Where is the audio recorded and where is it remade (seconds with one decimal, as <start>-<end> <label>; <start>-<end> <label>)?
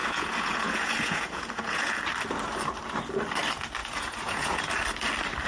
0.0-2.0 remade; 2.0-3.8 recorded; 3.8-4.7 remade; 4.7-5.5 recorded